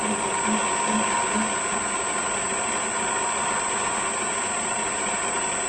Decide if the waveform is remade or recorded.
recorded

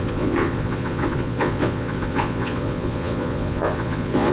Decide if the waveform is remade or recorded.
remade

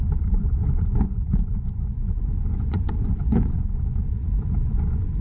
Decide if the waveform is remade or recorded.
remade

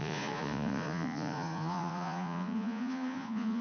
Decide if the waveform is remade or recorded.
remade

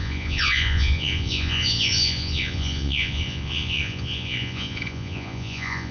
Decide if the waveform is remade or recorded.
remade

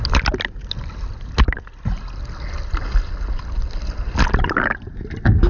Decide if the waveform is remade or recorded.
recorded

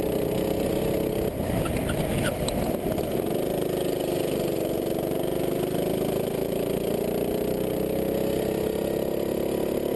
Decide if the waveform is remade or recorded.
recorded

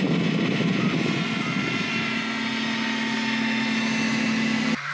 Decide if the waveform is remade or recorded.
recorded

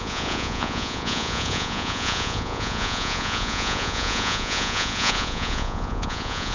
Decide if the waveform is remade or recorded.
remade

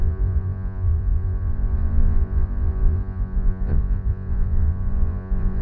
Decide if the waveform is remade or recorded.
remade